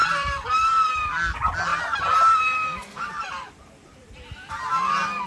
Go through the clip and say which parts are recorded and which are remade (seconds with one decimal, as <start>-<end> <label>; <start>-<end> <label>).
0.0-0.9 remade; 0.9-1.7 recorded; 1.7-4.5 remade; 4.5-5.3 recorded